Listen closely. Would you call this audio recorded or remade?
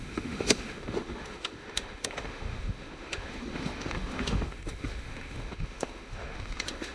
remade